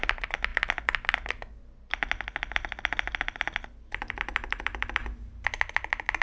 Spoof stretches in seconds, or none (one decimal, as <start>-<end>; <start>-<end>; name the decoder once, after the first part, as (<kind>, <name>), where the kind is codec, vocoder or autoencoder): none